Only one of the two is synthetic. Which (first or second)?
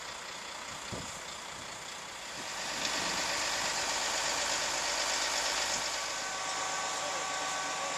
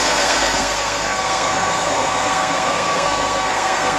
second